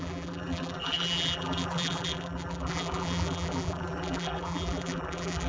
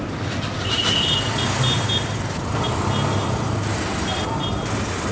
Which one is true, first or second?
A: second